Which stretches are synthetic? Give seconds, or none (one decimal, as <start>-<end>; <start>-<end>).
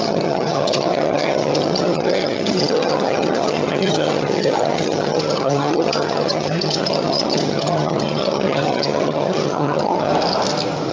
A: 0.0-10.1